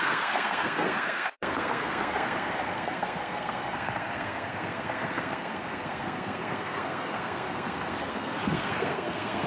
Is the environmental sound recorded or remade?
remade